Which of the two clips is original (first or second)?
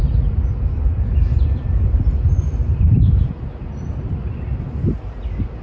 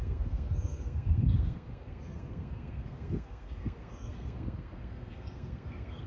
first